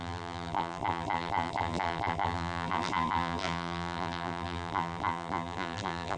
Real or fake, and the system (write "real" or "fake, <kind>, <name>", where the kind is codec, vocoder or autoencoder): fake, vocoder, BigVGAN v2